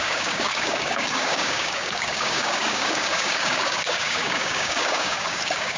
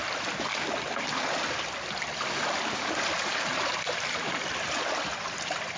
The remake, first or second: first